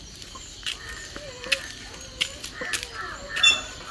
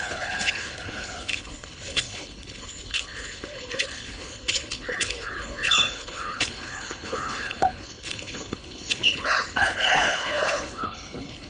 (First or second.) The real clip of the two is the first